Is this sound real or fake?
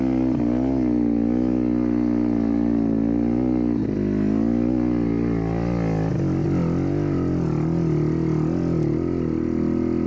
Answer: real